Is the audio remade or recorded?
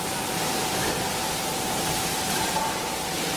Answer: remade